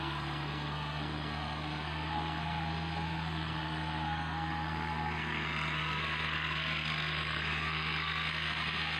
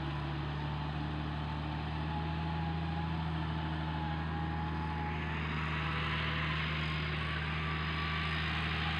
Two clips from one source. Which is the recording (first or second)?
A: second